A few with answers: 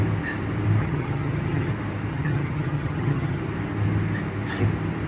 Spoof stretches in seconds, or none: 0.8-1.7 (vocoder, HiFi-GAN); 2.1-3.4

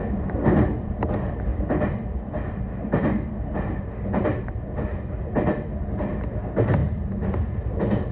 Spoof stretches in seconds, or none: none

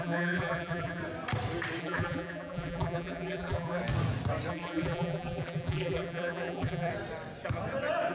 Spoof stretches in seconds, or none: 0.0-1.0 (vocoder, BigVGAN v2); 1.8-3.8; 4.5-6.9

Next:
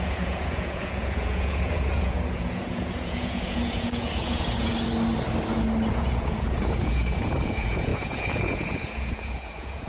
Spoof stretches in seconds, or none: 0.0-4.7 (vocoder, Vocos); 5.9-9.9

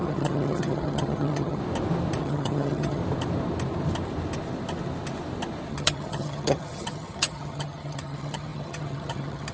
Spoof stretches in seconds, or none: 0.0-1.6 (vocoder, HiFi-GAN); 2.2-3.0; 5.7-9.5

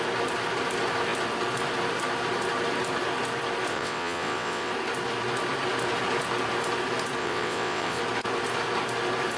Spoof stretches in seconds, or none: 3.7-4.7 (vocoder, WaveNeXt); 7.2-8.0